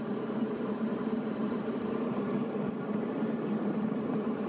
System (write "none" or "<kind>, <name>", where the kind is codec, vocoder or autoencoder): vocoder, BigVGAN v2